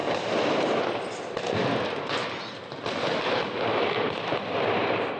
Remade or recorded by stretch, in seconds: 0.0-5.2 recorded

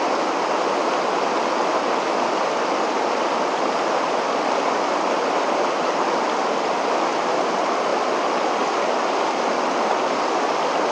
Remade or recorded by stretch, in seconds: 0.0-10.9 recorded